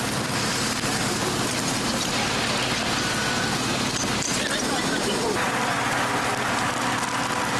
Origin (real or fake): real